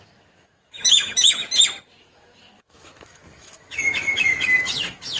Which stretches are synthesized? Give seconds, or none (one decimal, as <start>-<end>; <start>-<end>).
0.0-1.4; 2.0-5.2